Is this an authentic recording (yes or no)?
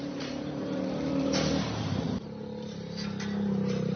yes